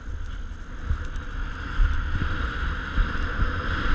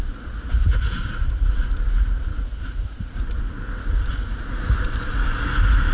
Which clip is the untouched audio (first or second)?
first